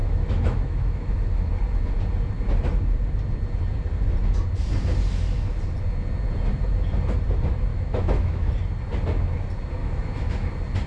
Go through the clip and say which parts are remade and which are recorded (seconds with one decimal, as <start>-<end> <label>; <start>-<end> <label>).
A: 0.0-1.5 remade; 1.5-7.7 recorded; 7.7-8.5 remade; 8.5-9.8 recorded; 9.8-10.5 remade; 10.5-10.9 recorded